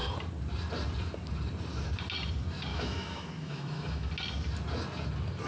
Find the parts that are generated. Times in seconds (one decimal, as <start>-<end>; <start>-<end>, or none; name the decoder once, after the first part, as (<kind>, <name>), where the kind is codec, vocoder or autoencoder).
2.7-4.1 (autoencoder, DAC-VAE)